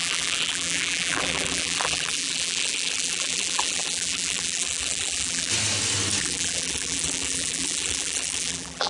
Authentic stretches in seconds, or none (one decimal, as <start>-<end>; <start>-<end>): 5.5-6.2